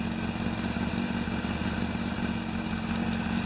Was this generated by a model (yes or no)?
no